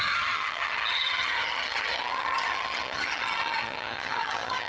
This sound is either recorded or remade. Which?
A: remade